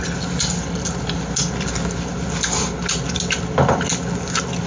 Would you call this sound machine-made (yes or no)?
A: no